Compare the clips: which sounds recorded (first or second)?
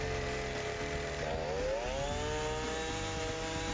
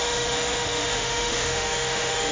first